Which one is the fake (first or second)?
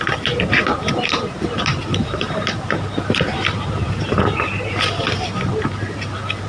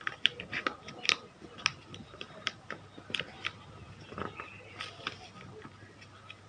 first